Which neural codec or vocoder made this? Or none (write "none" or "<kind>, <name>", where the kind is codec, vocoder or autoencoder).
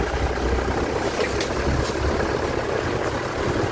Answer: none